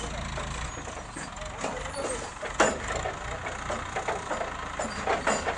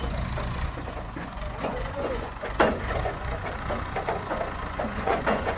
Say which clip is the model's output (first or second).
second